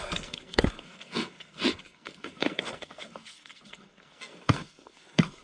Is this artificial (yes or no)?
yes